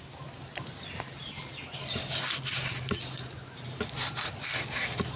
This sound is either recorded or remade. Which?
recorded